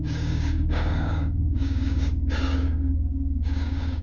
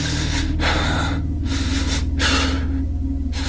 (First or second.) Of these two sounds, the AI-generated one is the first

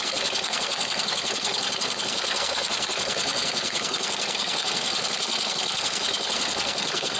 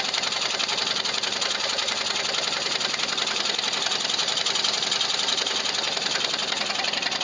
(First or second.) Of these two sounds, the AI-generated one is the first